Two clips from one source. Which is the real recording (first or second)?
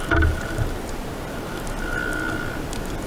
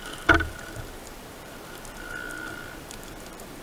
first